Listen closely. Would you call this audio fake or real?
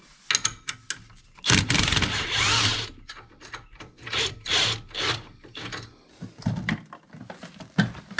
real